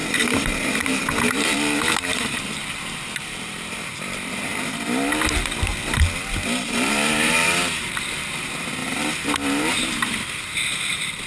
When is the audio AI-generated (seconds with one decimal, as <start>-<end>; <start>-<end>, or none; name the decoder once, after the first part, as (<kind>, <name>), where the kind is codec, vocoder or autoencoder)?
0.0-4.5 (vocoder, BigVGAN v2); 6.6-8.8; 9.6-11.3